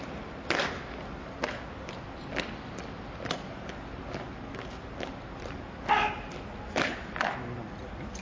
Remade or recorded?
recorded